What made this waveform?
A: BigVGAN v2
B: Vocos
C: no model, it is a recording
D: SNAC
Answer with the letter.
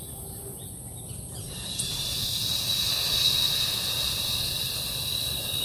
C